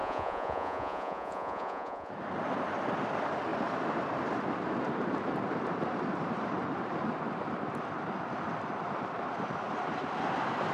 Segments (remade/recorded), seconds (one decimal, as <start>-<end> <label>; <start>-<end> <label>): 0.0-2.1 remade; 2.1-10.7 recorded